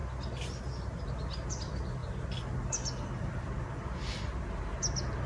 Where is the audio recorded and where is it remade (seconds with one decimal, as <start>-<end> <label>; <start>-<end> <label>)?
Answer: 0.0-5.3 recorded